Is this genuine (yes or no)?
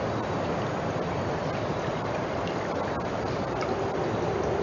no